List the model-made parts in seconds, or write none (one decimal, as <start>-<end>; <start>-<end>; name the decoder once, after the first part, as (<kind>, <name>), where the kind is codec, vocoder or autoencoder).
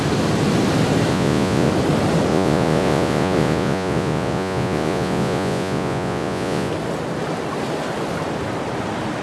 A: 1.1-1.7 (vocoder, Vocos); 2.3-6.7